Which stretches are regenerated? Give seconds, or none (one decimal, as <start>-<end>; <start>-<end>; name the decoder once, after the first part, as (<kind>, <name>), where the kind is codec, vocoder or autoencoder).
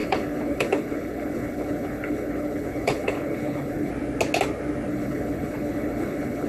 0.0-3.9 (codec, HILCodec); 4.9-6.5